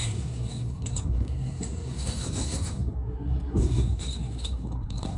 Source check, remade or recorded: remade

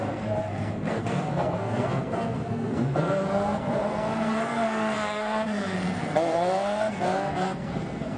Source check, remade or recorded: remade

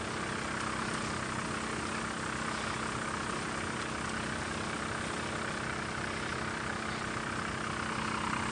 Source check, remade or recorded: recorded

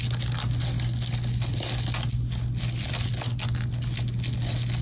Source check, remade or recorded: recorded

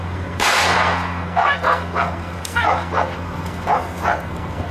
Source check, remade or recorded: remade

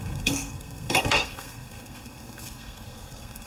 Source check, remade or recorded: remade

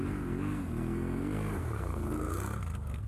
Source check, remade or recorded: remade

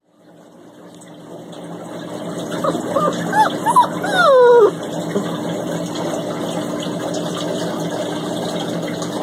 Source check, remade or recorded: recorded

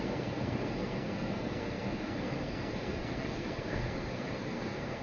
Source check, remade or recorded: remade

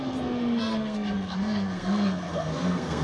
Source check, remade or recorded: remade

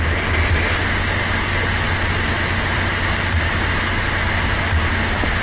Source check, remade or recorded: recorded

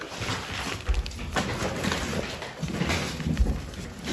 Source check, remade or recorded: recorded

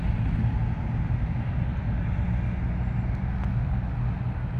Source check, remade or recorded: recorded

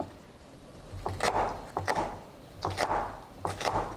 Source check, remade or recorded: recorded